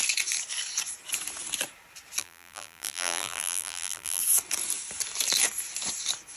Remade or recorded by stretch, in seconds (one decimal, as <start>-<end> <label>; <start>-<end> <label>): 0.0-2.2 recorded; 2.2-4.2 remade; 4.2-6.4 recorded